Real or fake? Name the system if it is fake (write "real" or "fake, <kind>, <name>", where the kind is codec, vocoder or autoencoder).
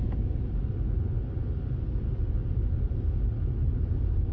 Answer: real